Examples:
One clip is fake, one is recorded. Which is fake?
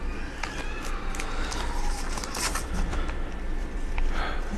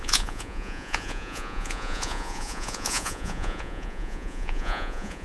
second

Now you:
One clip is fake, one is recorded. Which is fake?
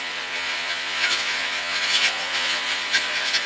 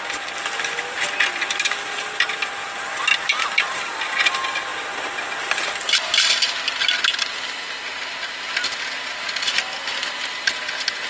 first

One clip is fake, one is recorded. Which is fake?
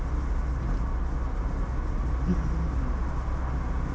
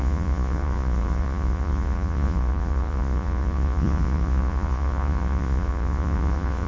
second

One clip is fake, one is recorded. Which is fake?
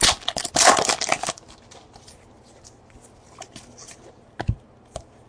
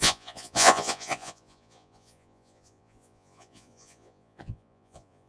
second